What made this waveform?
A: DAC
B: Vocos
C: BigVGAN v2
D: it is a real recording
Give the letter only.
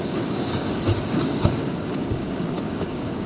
A